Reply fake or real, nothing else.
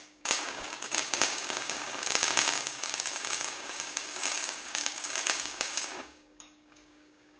fake